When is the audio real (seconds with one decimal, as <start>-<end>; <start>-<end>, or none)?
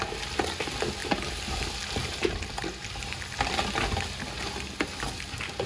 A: 0.0-5.7